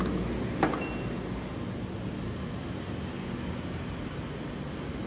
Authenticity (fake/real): real